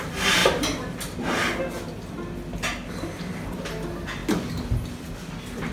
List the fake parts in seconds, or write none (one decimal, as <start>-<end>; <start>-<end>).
0.4-1.7